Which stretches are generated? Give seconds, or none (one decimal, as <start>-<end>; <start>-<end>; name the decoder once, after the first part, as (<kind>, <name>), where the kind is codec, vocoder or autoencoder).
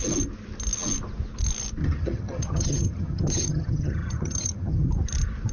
1.8-4.9 (vocoder, HiFi-GAN)